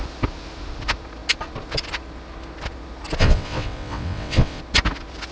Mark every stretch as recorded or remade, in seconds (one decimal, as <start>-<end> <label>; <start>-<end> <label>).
0.0-3.2 recorded; 3.2-4.6 remade; 4.6-5.3 recorded